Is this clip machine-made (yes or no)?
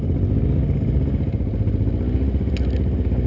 no